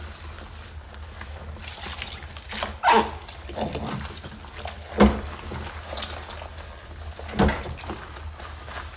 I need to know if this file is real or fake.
real